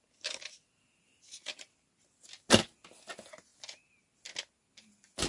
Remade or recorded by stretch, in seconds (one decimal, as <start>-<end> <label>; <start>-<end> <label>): 0.0-5.3 recorded